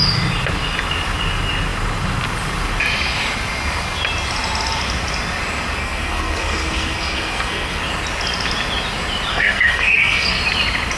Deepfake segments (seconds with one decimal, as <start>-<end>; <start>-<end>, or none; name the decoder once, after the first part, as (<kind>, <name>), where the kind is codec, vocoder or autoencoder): 5.8-7.8 (codec, SNAC); 9.3-10.4